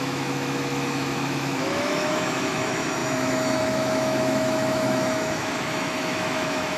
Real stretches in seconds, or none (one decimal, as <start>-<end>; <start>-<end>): none